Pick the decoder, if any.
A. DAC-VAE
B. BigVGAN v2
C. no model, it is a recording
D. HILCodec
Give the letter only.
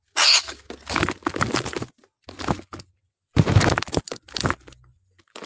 C